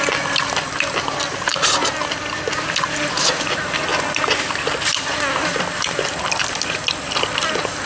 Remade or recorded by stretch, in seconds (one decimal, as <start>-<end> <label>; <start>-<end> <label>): 0.0-3.9 remade; 3.9-5.1 recorded; 5.1-7.9 remade